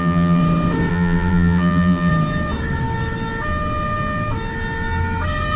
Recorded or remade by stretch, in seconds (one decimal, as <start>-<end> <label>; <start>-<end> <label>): 0.0-0.4 remade; 0.4-0.9 recorded; 0.9-2.1 remade; 2.1-5.6 recorded